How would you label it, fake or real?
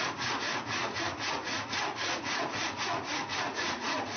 fake